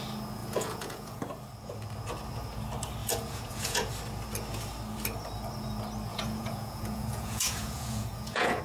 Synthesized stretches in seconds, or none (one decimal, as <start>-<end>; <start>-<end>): 0.4-1.2; 3.0-3.9; 6.1-8.6